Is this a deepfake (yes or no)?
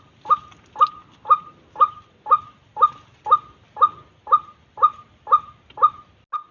no